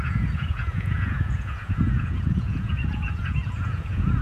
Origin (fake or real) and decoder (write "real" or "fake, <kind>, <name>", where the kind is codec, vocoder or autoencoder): fake, vocoder, Vocos